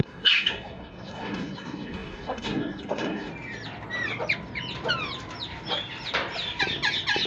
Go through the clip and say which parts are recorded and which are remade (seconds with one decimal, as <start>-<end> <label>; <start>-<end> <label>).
0.0-3.3 remade; 3.3-7.3 recorded